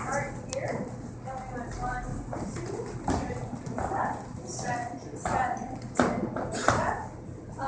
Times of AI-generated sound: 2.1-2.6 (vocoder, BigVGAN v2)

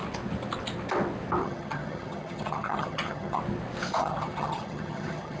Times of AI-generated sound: 1.4-3.4 (vocoder, HiFi-GAN); 4.0-5.4

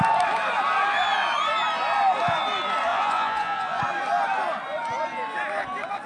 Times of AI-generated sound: 2.9-3.8 (vocoder, Vocos)

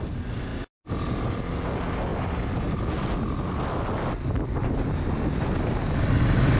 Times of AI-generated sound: none

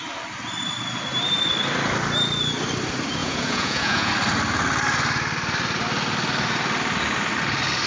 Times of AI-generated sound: 3.2-4.1 (vocoder, Vocos)

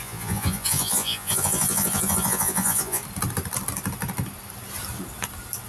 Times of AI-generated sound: 0.0-3.0 (vocoder, Vocos)

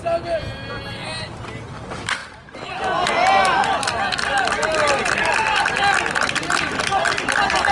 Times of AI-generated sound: none